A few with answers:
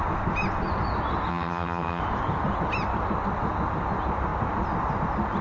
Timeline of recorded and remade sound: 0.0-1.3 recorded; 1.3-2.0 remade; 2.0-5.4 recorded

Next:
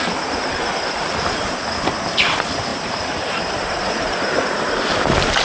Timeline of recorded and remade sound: 0.0-2.7 recorded; 2.7-3.5 remade; 3.5-5.4 recorded

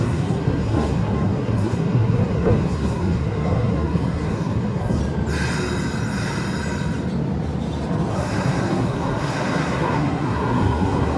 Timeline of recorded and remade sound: 0.0-5.0 remade; 5.0-8.1 recorded; 8.1-11.2 remade

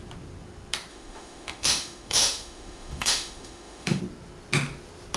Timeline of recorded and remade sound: 0.0-0.9 recorded; 0.9-4.0 remade; 4.0-5.2 recorded

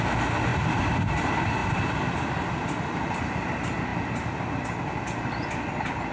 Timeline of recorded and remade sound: 0.0-6.1 recorded